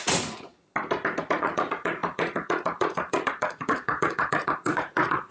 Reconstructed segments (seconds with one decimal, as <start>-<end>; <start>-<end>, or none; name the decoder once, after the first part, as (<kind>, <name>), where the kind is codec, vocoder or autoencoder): 0.0-0.5 (vocoder, Vocos); 1.2-5.3